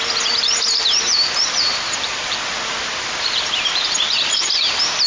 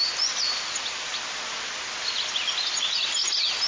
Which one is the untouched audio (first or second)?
second